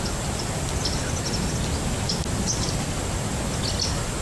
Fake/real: real